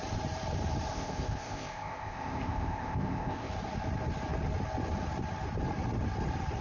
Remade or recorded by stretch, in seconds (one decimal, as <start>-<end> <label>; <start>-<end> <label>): 0.0-0.9 recorded; 0.9-3.5 remade; 3.5-6.6 recorded

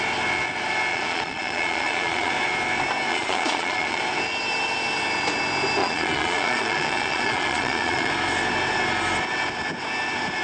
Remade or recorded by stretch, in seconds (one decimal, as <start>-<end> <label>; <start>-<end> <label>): 0.0-0.9 recorded; 0.9-2.3 remade; 2.3-3.1 recorded; 3.1-4.0 remade; 4.0-5.8 recorded; 5.8-8.1 remade; 8.1-10.4 recorded

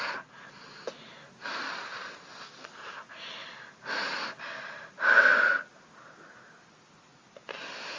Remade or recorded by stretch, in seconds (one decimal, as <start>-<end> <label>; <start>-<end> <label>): 0.0-8.0 recorded

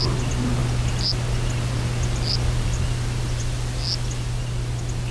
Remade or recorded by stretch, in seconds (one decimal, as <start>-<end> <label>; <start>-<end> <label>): 0.0-5.1 recorded

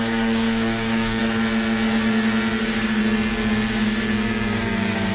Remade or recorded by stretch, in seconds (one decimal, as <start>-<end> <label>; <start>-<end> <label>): 0.0-1.2 remade; 1.2-2.6 recorded; 2.6-3.0 remade; 3.0-3.7 recorded; 3.7-5.1 remade

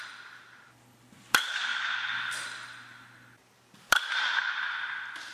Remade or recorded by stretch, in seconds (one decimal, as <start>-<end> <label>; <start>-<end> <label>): 0.0-5.3 recorded

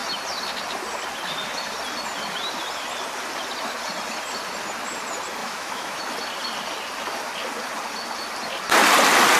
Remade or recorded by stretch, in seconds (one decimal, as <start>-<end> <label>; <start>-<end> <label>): 0.0-5.4 recorded; 5.4-6.0 remade; 6.0-9.4 recorded